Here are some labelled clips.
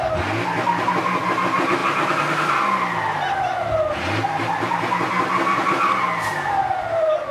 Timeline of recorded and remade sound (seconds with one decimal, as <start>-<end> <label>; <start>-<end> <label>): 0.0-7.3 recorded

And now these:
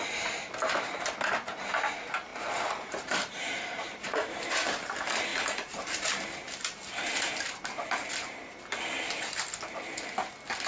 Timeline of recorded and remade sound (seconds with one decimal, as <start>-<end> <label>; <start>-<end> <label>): 0.0-2.3 recorded; 2.3-4.5 remade; 4.5-5.3 recorded; 5.3-8.6 remade; 8.6-10.7 recorded

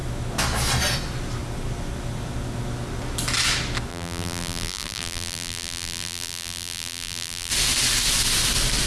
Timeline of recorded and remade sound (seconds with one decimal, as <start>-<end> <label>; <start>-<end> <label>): 0.0-3.9 recorded; 3.9-7.5 remade; 7.5-8.9 recorded